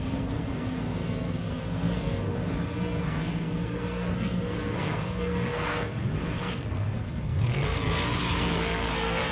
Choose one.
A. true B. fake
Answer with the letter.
B